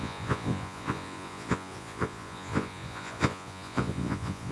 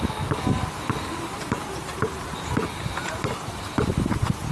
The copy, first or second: first